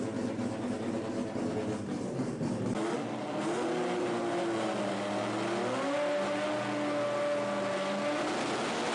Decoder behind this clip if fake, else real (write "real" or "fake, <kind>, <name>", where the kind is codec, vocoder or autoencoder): real